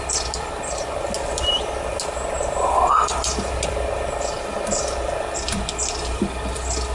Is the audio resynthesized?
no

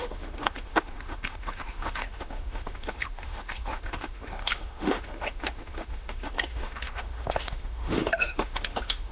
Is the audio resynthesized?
yes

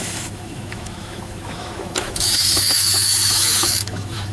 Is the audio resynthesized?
yes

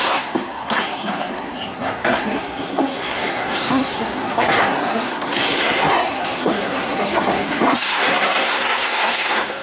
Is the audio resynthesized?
yes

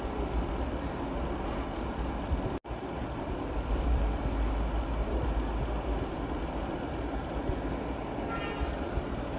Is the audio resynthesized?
no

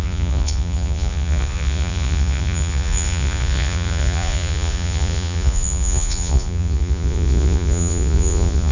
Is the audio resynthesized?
yes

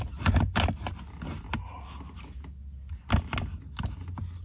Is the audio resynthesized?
no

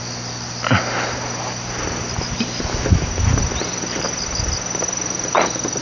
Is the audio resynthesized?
no